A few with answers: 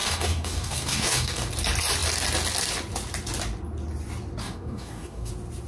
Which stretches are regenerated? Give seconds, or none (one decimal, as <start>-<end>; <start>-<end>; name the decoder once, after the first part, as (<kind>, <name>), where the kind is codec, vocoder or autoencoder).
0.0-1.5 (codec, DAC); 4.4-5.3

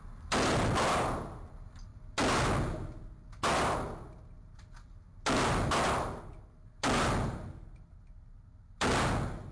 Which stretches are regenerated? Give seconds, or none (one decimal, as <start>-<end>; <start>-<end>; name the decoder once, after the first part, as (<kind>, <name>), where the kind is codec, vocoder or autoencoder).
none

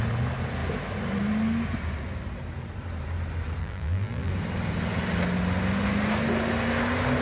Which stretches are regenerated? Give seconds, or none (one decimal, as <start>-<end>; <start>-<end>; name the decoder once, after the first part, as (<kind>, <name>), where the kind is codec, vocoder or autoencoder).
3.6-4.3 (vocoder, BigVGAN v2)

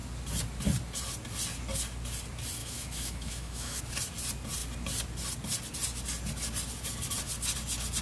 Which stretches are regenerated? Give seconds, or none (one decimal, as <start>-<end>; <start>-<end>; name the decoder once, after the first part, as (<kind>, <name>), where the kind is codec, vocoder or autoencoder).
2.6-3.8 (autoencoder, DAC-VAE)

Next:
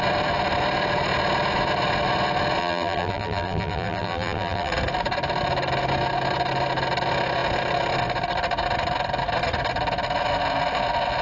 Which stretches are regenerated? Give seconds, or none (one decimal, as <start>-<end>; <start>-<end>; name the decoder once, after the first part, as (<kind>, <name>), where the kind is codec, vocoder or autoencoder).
2.6-4.7 (vocoder, BigVGAN v2)

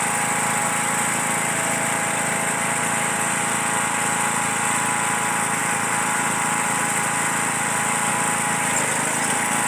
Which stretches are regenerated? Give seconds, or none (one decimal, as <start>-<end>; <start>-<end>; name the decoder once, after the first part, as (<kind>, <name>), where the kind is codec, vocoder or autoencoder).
5.6-8.1 (vocoder, BigVGAN v2)

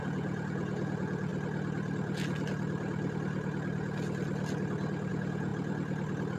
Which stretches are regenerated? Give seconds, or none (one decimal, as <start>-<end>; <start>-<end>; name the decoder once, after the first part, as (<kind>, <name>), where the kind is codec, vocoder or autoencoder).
0.0-1.3 (vocoder, Vocos); 5.1-5.5